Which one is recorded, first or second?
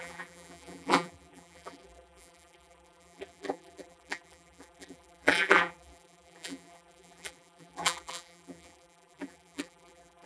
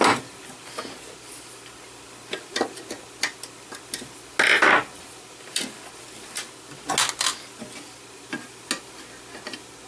second